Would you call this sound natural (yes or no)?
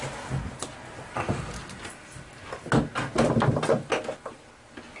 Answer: yes